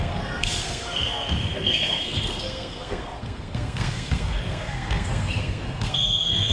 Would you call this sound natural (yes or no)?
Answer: no